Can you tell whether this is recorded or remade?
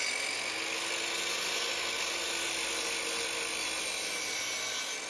recorded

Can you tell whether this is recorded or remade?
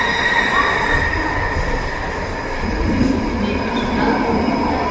recorded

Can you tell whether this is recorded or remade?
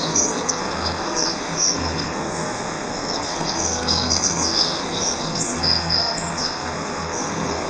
remade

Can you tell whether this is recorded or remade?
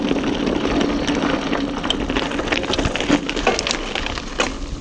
recorded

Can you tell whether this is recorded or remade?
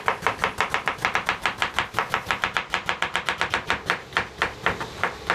recorded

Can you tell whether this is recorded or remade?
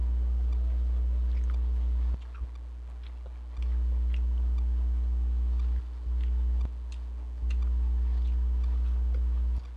recorded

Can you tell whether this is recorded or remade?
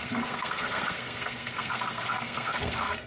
remade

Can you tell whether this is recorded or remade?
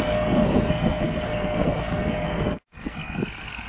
remade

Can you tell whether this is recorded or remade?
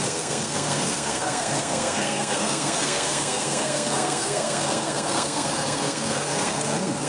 remade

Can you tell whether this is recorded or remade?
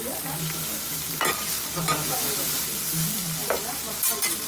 recorded